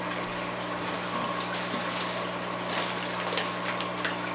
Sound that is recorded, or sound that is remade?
recorded